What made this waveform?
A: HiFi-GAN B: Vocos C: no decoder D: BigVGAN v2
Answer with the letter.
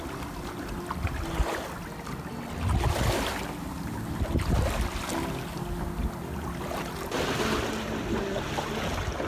C